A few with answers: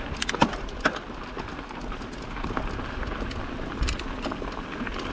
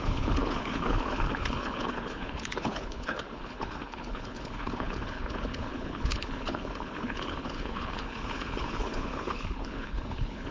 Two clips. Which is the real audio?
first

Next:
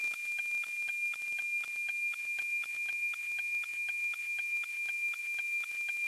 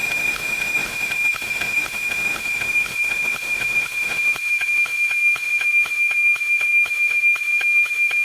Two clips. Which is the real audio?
first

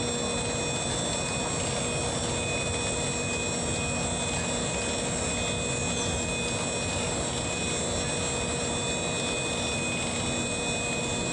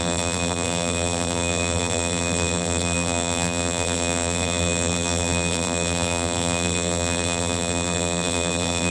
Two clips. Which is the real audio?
first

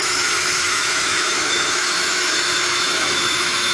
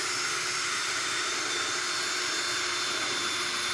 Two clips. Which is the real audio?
second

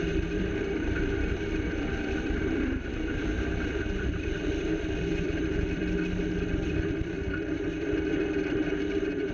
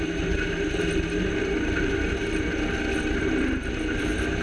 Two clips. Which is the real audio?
second